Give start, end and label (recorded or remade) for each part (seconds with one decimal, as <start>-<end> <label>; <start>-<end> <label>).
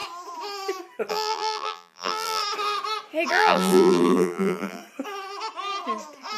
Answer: 0.0-1.1 recorded; 1.1-2.4 remade; 2.4-3.3 recorded; 3.3-4.8 remade; 4.8-6.4 recorded